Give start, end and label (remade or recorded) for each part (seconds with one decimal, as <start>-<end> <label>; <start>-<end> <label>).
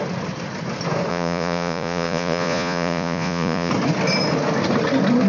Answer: 0.0-1.1 recorded; 1.1-3.7 remade; 3.7-5.3 recorded